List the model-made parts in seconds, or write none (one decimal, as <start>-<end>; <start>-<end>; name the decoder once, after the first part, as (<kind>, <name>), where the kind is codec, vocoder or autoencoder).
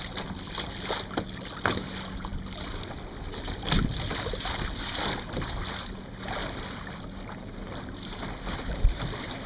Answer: none